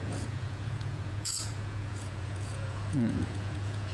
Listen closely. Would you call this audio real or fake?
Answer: fake